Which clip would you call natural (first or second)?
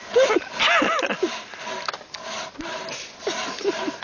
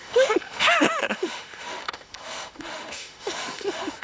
first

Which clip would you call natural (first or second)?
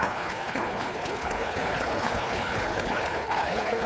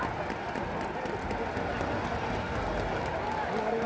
second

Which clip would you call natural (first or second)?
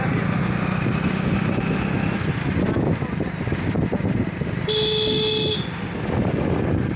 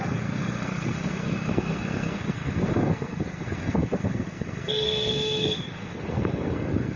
first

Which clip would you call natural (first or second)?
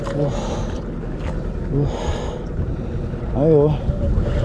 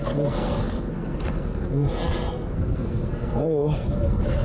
first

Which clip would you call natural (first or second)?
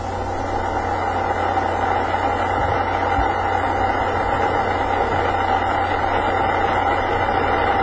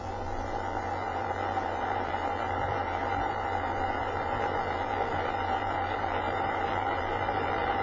first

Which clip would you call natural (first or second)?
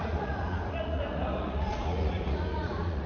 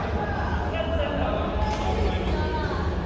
second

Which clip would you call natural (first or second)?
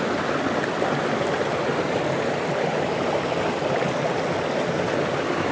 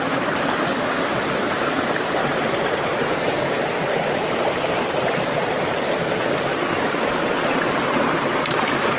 first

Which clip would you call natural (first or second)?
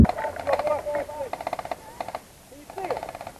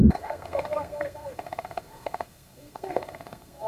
first